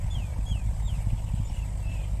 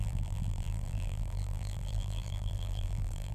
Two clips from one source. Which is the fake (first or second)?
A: second